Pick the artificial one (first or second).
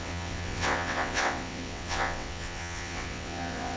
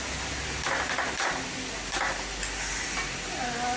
first